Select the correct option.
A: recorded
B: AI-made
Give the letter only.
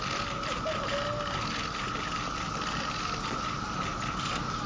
A